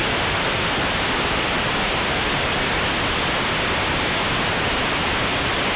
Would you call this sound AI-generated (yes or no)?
no